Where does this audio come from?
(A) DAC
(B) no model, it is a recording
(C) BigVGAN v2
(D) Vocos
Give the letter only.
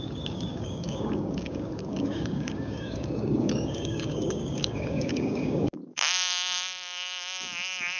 A